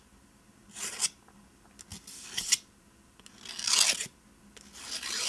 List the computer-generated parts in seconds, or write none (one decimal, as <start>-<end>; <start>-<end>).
none